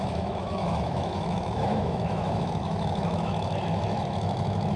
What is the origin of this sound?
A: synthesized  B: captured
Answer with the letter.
A